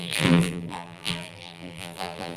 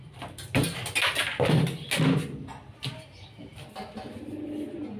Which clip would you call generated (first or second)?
first